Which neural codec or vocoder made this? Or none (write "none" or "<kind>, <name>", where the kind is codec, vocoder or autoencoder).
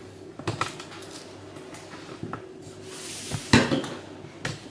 none